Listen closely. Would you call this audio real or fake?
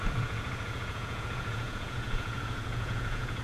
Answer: fake